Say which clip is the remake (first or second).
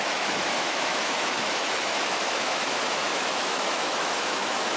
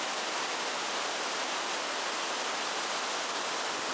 first